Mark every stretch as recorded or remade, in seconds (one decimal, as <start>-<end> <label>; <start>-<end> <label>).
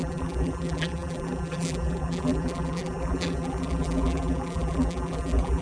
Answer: 0.0-5.6 remade